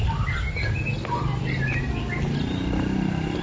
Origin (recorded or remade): recorded